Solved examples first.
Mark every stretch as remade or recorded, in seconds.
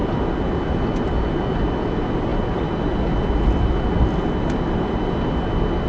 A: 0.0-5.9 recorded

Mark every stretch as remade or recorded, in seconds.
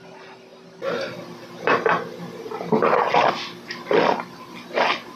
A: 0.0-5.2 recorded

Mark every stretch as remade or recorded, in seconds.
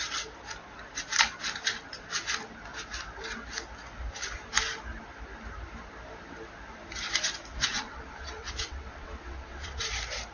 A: 0.0-7.5 recorded; 7.5-9.8 remade; 9.8-10.3 recorded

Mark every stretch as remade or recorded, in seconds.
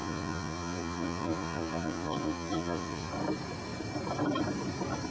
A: 0.0-3.1 remade; 3.1-5.1 recorded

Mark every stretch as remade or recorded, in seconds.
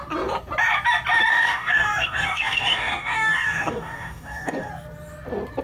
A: 0.0-1.3 recorded; 1.3-4.7 remade; 4.7-5.6 recorded